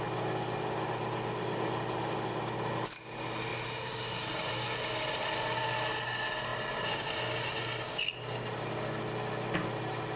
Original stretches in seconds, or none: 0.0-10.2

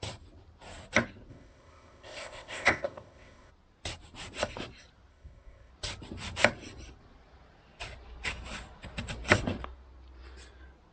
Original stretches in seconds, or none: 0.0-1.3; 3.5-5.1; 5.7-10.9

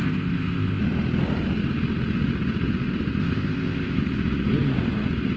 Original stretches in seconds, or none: 0.8-3.2; 4.0-5.4

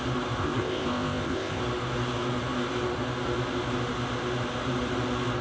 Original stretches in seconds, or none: 0.0-0.4; 1.6-5.4

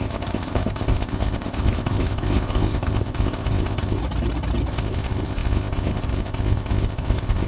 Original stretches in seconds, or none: 4.0-4.7

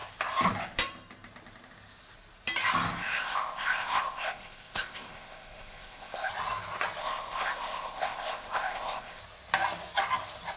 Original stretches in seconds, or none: 0.0-3.0; 6.3-7.0; 9.2-10.6